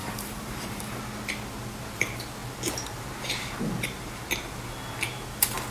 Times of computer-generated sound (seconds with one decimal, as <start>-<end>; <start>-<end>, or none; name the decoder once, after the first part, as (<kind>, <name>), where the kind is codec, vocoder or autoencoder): 0.0-1.0 (vocoder, BigVGAN v2)